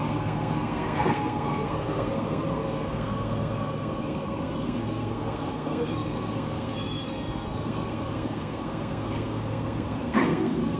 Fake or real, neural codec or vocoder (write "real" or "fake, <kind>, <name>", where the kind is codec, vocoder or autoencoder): fake, codec, SNAC